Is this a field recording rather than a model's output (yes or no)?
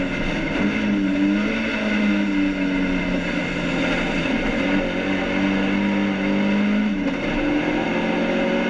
yes